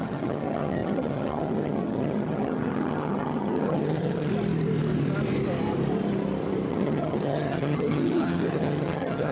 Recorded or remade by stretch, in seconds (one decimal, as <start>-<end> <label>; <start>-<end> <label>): 0.0-4.3 remade; 4.3-6.7 recorded; 6.7-9.3 remade